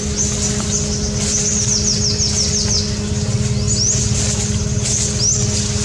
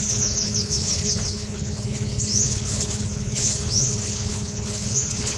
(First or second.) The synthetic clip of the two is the second